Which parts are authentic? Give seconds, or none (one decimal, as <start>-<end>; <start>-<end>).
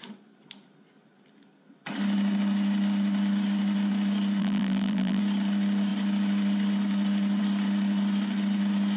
0.0-4.4; 5.2-9.0